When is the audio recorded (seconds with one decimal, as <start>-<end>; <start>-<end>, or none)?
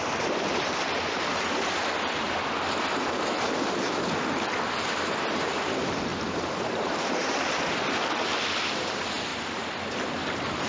0.0-6.1; 8.0-9.3; 10.0-10.7